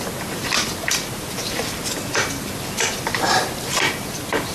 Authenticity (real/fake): real